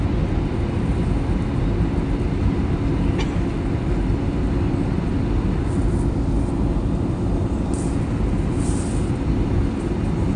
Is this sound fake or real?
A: real